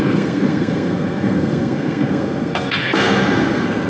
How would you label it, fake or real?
fake